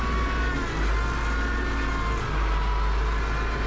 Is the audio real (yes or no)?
yes